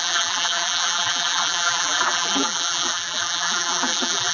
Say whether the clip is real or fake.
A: fake